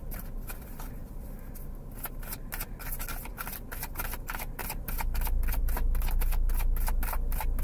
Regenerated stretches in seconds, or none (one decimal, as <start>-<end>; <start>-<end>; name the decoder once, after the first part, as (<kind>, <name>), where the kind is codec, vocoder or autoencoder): none